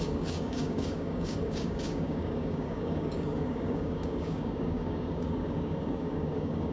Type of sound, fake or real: fake